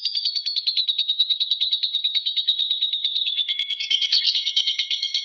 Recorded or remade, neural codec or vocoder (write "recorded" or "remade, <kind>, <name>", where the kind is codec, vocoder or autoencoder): remade, codec, SNAC